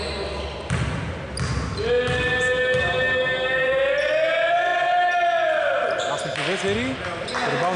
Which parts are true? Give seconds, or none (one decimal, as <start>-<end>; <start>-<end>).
0.0-7.8

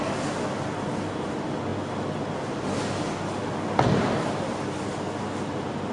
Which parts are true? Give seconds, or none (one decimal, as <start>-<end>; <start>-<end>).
0.0-5.9